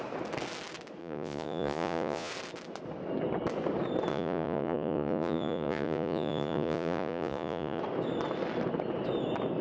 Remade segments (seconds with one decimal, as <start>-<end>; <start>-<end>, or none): 1.0-2.3; 4.1-7.8